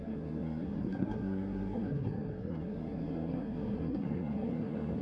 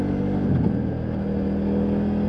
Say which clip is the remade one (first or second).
first